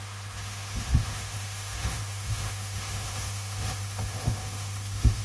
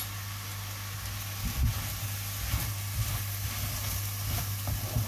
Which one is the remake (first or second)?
first